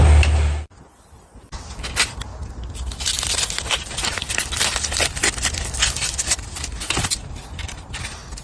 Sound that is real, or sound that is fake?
real